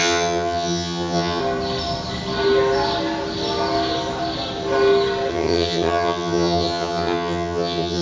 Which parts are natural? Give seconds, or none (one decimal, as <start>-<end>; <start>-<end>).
1.4-5.3